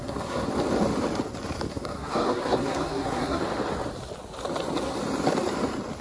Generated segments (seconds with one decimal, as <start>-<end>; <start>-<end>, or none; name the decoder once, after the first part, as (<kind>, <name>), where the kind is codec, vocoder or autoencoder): 0.0-0.5 (codec, SNAC); 1.7-3.4